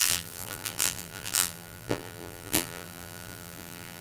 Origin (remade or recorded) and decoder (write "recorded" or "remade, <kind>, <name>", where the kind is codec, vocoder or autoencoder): remade, vocoder, BigVGAN v2